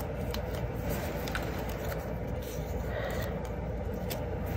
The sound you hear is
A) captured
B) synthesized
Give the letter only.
A